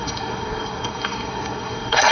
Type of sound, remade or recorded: remade